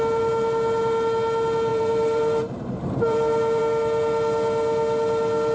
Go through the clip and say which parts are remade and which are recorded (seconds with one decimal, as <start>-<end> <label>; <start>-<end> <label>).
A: 0.0-1.7 recorded; 1.7-3.6 remade; 3.6-5.5 recorded

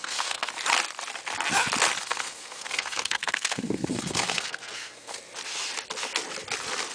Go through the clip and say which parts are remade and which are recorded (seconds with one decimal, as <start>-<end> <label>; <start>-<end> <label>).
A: 0.0-0.5 remade; 0.5-2.0 recorded; 2.0-5.2 remade; 5.2-6.9 recorded

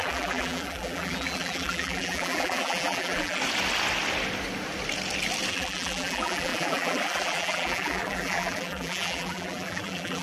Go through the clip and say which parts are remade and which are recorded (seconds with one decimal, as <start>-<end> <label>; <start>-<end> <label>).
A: 0.0-3.4 remade; 3.4-5.5 recorded; 5.5-10.2 remade

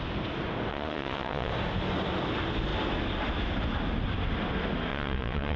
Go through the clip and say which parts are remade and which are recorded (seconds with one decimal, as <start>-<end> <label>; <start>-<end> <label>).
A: 0.0-0.7 recorded; 0.7-1.5 remade; 1.5-4.9 recorded; 4.9-5.6 remade

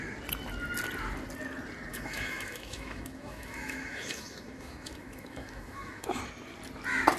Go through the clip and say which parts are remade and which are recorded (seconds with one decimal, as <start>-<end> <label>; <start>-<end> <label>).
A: 0.0-1.9 recorded; 1.9-6.2 remade; 6.2-7.2 recorded

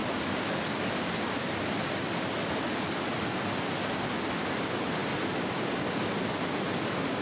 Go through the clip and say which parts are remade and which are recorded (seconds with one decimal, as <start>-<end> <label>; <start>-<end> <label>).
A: 0.0-7.2 recorded

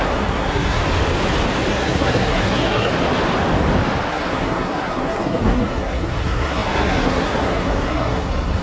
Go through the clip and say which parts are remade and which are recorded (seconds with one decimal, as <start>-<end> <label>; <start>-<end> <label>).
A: 0.0-0.8 remade; 0.8-1.7 recorded; 1.7-2.9 remade; 2.9-4.1 recorded; 4.1-8.6 remade